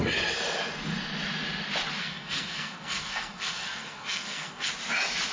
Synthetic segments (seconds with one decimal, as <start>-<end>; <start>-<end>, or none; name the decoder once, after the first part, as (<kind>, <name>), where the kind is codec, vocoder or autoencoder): 2.0-4.7 (codec, SNAC)